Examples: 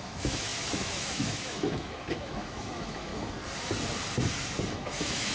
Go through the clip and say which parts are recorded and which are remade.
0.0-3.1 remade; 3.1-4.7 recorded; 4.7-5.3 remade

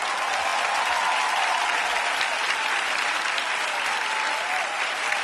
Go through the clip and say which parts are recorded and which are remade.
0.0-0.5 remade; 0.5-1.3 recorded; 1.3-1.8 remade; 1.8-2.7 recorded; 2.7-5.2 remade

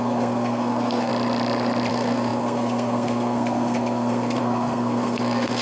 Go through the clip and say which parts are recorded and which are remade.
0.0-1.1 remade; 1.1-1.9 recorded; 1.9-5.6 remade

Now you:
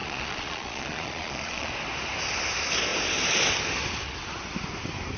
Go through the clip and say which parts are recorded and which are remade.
0.0-1.7 remade; 1.7-5.2 recorded

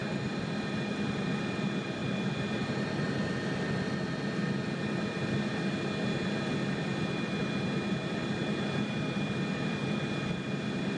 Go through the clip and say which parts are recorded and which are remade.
0.0-11.0 recorded

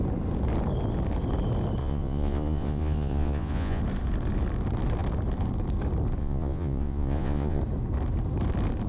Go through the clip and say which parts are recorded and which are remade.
0.0-1.8 recorded; 1.8-3.8 remade; 3.8-6.2 recorded; 6.2-7.6 remade; 7.6-8.9 recorded

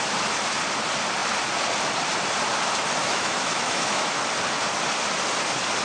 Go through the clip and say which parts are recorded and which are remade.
0.0-3.0 recorded; 3.0-4.2 remade; 4.2-5.8 recorded

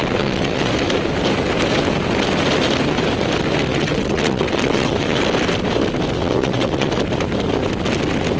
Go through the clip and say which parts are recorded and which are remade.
0.0-0.7 remade; 0.7-3.7 recorded; 3.7-5.2 remade; 5.2-6.2 recorded; 6.2-6.9 remade; 6.9-8.4 recorded